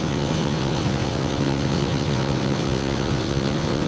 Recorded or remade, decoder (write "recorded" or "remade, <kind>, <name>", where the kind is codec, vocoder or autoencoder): remade, vocoder, WaveNeXt